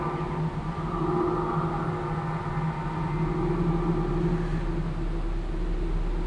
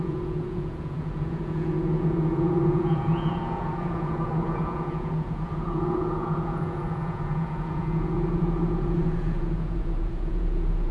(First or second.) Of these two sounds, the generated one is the second